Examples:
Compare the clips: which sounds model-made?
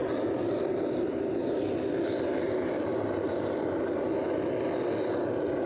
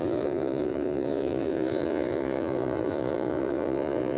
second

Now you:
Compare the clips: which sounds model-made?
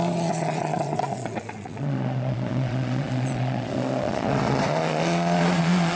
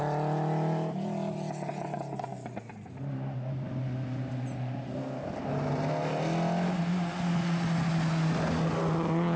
first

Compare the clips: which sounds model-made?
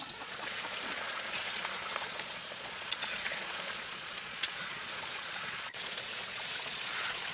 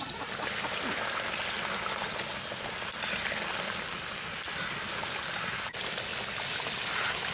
first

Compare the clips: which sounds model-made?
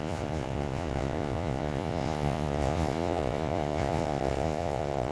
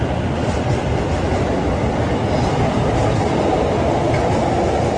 first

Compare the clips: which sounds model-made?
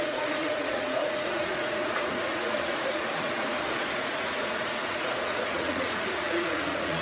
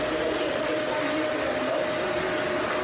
first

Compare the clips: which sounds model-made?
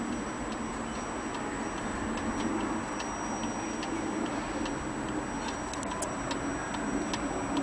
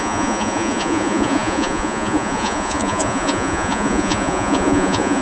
second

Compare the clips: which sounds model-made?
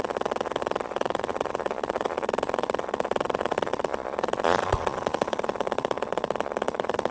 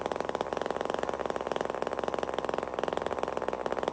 first